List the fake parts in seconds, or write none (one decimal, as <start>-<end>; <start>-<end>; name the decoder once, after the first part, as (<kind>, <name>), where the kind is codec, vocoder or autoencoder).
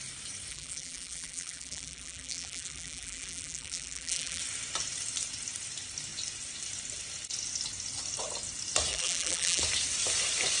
0.5-4.4 (vocoder, BigVGAN v2); 8.9-9.6